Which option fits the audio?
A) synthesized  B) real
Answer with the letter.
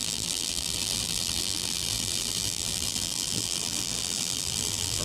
A